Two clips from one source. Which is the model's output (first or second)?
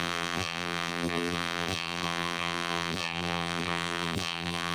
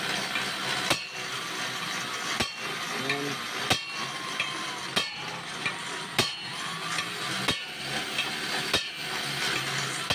first